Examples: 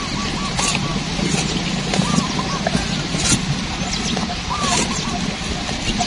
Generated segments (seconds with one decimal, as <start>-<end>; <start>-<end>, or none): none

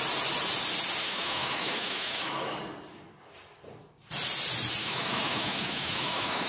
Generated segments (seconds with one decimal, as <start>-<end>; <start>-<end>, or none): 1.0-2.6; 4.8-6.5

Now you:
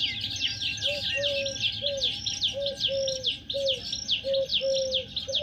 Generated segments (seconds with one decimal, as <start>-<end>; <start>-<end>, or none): 2.1-2.7

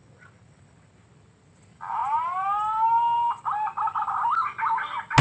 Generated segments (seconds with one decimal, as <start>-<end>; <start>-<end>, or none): none